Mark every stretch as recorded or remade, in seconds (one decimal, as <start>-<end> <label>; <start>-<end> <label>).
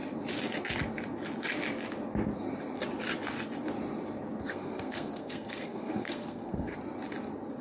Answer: 0.0-4.4 recorded; 4.4-6.7 remade; 6.7-7.6 recorded